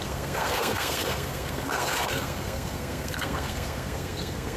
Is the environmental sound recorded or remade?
remade